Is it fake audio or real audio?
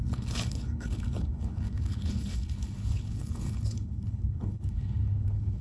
fake